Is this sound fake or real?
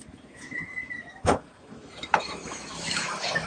fake